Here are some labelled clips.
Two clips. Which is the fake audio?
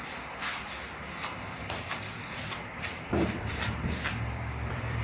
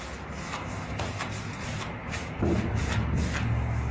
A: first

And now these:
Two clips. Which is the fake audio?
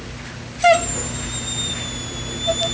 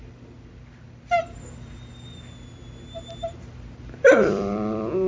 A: second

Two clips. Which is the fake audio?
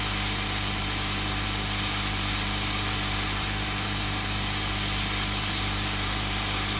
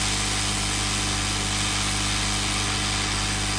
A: first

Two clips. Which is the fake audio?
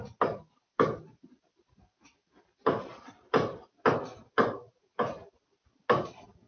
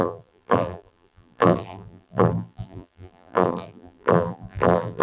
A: second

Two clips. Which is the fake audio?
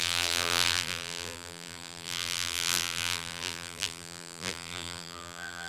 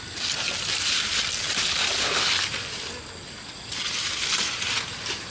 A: first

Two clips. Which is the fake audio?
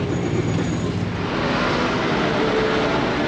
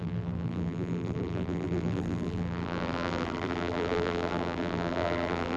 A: second